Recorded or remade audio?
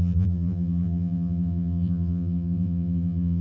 remade